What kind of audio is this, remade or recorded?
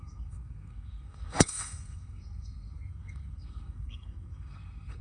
remade